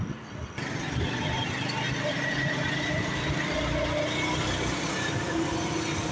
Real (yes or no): yes